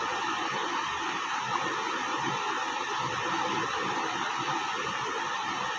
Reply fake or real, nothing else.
real